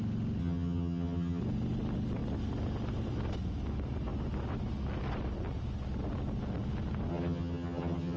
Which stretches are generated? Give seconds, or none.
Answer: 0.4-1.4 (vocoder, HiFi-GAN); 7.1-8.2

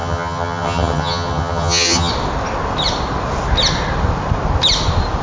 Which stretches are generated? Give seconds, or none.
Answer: 0.0-2.1 (vocoder, HiFi-GAN)

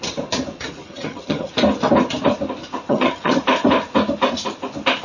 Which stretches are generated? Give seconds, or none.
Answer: 0.8-1.5 (vocoder, HiFi-GAN); 2.9-3.4

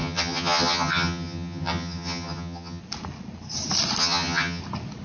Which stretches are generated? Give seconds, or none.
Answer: 0.0-2.8 (vocoder, HiFi-GAN); 4.0-4.6

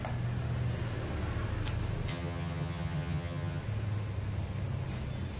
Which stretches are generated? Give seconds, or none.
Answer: 2.1-3.6 (vocoder, HiFi-GAN)

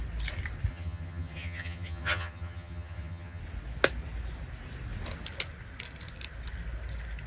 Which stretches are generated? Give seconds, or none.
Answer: 0.7-3.4 (vocoder, HiFi-GAN)

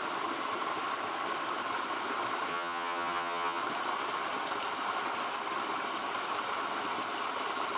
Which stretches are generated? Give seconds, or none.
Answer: 2.5-3.6 (vocoder, HiFi-GAN)

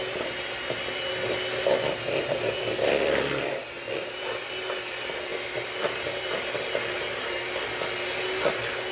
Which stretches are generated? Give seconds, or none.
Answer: none